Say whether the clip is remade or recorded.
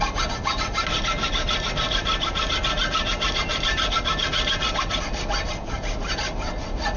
recorded